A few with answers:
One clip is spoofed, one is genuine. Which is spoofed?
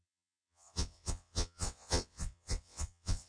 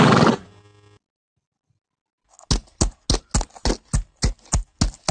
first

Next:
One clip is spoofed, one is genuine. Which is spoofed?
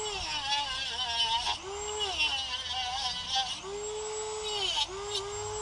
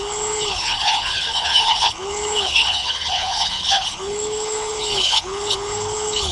second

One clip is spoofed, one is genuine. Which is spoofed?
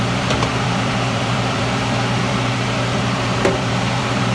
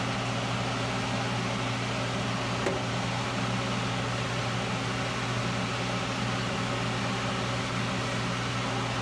first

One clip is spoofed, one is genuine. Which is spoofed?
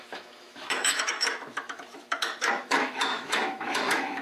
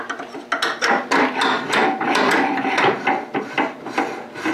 first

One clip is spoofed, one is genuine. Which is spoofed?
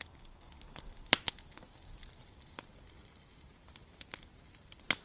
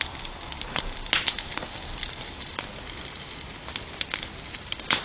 first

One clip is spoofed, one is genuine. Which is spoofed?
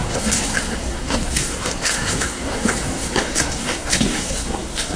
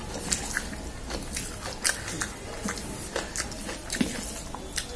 first